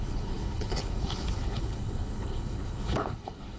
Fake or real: fake